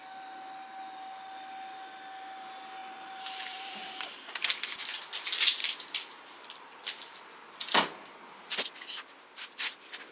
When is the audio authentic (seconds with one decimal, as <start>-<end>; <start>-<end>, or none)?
0.0-2.8; 4.1-5.6; 7.2-10.1